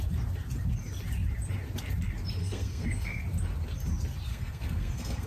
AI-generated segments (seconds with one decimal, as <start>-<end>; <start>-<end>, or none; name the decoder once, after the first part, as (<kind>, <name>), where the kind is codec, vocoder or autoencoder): 2.4-3.2 (codec, SNAC); 4.3-5.3